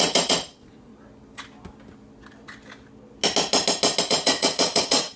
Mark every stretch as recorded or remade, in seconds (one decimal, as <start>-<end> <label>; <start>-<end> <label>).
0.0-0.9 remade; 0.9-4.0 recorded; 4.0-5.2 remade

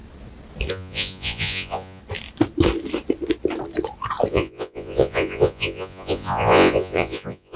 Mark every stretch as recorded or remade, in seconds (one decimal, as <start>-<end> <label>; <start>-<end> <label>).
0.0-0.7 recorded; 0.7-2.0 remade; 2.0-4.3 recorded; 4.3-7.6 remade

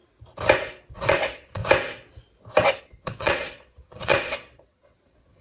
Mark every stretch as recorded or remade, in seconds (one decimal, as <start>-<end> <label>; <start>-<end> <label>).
0.0-0.9 recorded; 0.9-1.6 remade; 1.6-2.8 recorded; 2.8-5.4 remade

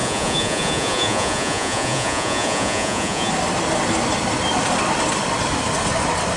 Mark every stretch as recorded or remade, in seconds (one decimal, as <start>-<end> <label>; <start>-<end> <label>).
0.0-3.3 remade; 3.3-6.4 recorded

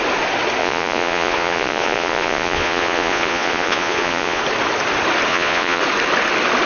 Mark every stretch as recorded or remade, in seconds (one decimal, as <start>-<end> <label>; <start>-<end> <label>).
0.0-0.6 recorded; 0.6-4.4 remade; 4.4-5.3 recorded; 5.3-5.8 remade; 5.8-6.7 recorded

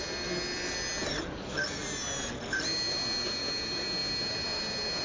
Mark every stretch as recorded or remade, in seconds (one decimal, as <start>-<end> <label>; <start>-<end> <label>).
0.0-5.0 recorded

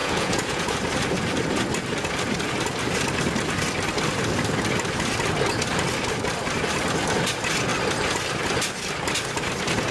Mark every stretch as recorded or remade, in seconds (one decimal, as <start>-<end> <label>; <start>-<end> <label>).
0.0-0.7 remade; 0.7-9.9 recorded

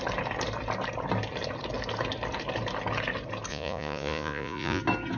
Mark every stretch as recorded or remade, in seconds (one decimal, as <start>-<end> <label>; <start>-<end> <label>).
0.0-3.5 recorded; 3.5-4.8 remade; 4.8-5.2 recorded